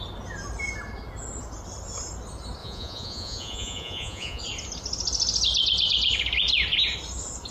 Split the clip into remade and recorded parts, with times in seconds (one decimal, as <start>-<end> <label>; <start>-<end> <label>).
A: 0.0-2.6 recorded; 2.6-4.4 remade; 4.4-7.5 recorded